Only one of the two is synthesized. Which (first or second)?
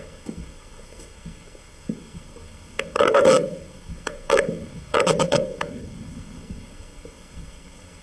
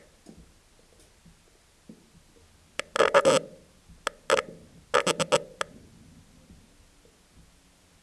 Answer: first